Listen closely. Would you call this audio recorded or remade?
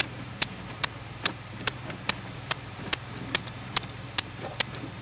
remade